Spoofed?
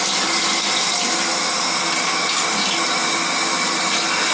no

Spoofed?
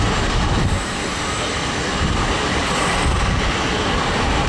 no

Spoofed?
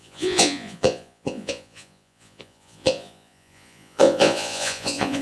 yes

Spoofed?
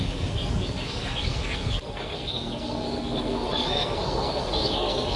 yes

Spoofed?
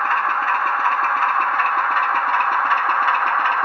yes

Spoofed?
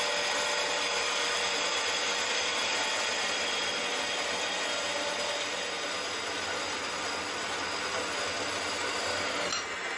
no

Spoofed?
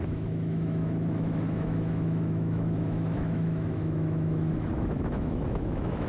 yes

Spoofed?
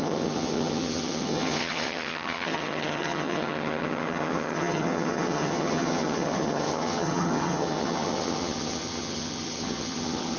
yes